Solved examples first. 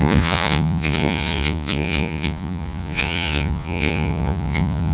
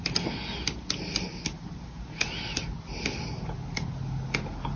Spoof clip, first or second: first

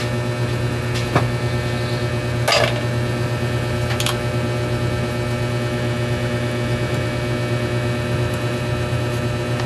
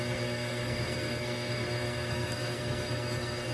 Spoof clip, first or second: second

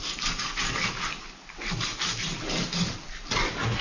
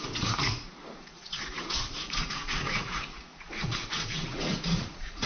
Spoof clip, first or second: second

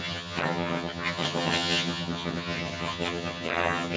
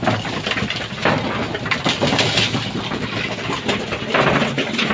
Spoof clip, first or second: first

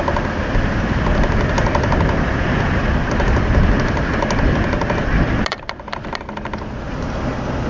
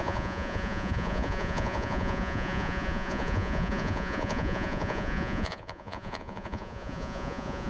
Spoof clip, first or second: second